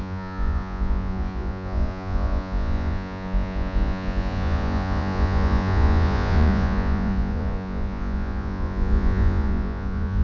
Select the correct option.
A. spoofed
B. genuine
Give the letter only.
A